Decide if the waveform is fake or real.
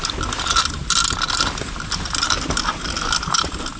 real